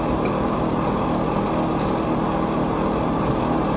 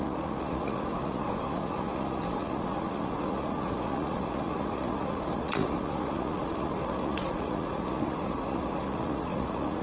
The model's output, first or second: second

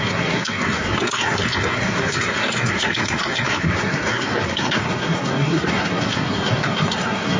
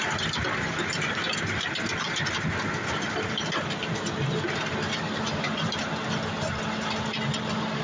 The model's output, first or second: first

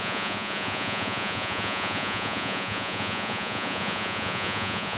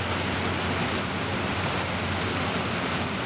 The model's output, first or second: first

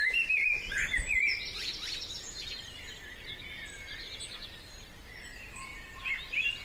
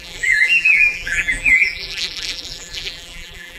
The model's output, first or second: second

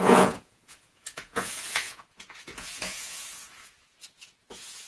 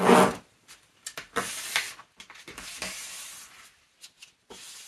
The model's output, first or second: first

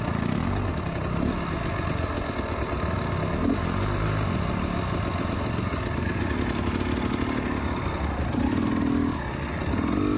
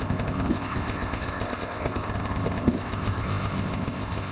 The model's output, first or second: second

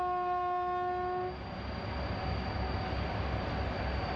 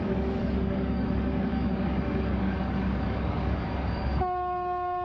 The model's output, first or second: second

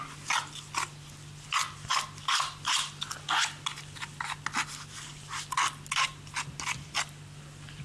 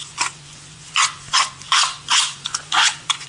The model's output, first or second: second